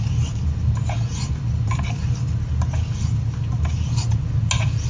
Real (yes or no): yes